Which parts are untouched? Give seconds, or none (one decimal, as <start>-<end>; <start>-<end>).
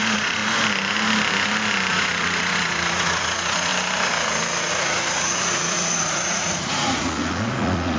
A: 0.4-1.9; 3.7-4.7